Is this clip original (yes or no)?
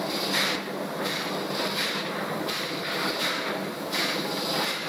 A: yes